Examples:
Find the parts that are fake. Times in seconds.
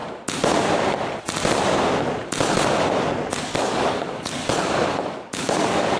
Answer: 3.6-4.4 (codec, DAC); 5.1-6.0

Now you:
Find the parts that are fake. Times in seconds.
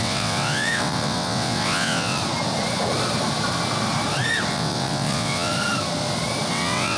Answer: 0.0-2.2 (vocoder, WaveNeXt); 4.5-5.5; 6.5-7.0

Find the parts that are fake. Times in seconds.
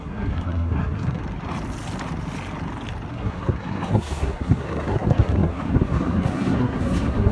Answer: 0.0-1.2 (codec, SNAC); 3.1-7.3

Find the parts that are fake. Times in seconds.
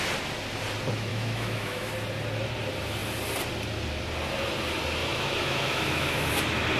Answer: 1.1-1.9 (autoencoder, DAC-VAE); 5.0-6.3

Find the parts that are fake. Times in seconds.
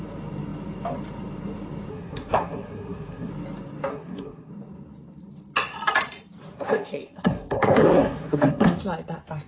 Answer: 1.9-3.3 (codec, SNAC); 3.9-4.5; 6.5-8.8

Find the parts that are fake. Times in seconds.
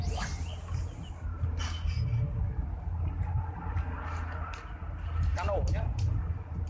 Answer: none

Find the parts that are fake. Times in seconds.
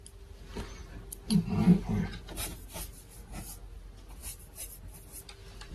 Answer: none